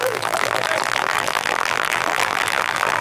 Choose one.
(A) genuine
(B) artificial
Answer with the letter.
B